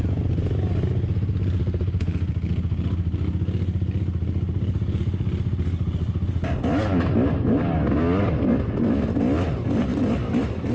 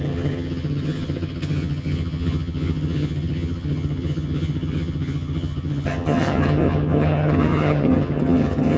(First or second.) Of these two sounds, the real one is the first